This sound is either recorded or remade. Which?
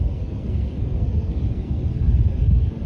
remade